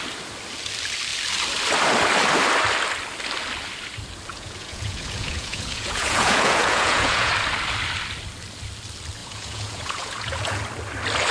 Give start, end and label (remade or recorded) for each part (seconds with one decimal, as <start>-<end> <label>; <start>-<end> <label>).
0.0-4.3 recorded; 4.3-7.3 remade; 7.3-9.2 recorded; 9.2-10.6 remade; 10.6-11.3 recorded